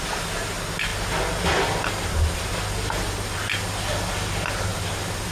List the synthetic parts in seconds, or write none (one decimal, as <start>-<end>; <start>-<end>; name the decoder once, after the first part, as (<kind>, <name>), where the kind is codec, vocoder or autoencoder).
4.7-5.3 (vocoder, BigVGAN v2)